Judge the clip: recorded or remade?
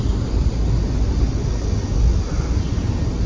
recorded